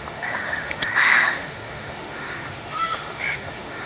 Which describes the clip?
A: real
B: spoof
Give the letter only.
B